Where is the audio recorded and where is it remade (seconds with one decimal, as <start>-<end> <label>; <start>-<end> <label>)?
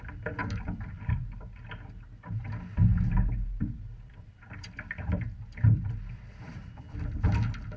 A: 0.0-2.8 recorded; 2.8-7.3 remade; 7.3-7.8 recorded